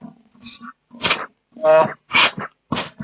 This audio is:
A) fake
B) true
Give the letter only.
B